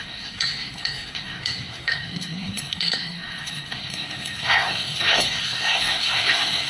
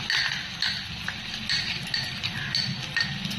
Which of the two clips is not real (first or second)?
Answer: first